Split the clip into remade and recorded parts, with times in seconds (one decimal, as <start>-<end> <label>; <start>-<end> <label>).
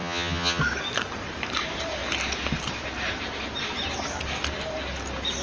0.0-0.6 remade; 0.6-5.4 recorded